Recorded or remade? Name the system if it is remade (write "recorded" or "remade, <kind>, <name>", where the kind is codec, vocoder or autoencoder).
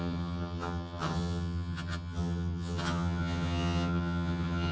remade, vocoder, HiFi-GAN